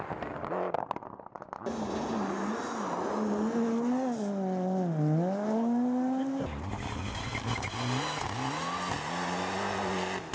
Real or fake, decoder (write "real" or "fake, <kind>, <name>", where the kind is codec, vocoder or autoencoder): real